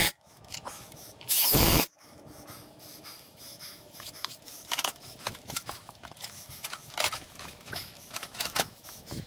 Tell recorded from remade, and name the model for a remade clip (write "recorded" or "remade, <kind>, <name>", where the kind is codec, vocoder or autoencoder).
remade, autoencoder, DAC-VAE